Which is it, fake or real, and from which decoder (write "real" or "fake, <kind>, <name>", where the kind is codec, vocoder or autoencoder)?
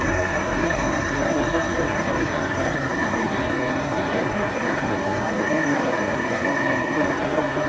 fake, codec, SNAC